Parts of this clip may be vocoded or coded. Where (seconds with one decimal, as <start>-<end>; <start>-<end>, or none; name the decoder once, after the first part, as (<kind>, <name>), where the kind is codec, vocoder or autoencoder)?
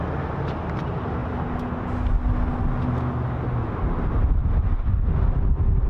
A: none